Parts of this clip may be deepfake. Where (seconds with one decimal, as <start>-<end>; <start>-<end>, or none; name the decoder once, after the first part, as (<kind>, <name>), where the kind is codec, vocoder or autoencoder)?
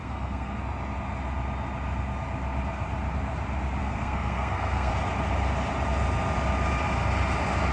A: 0.0-0.6 (codec, SNAC); 3.8-4.9